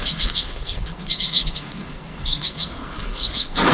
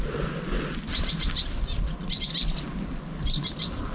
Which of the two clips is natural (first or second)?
second